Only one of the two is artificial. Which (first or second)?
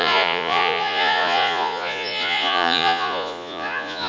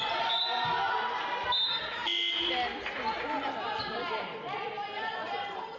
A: first